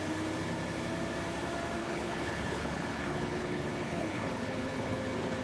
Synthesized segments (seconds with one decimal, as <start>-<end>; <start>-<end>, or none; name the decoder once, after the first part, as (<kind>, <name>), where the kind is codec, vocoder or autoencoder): 1.8-5.0 (codec, HILCodec)